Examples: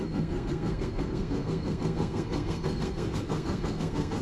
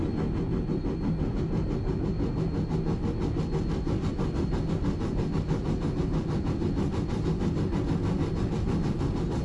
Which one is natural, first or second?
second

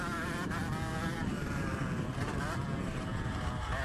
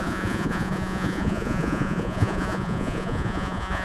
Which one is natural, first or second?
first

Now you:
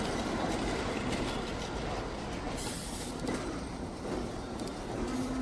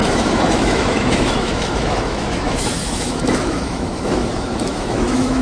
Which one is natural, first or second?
first